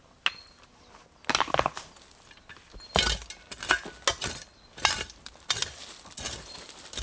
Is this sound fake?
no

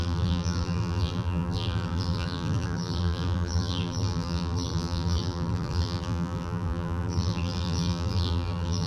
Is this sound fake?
yes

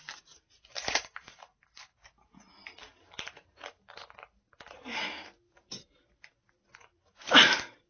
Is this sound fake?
yes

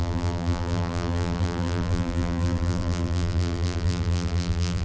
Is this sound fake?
yes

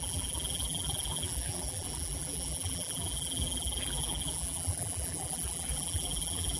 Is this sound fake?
yes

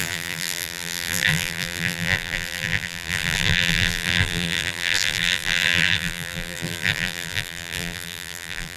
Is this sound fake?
yes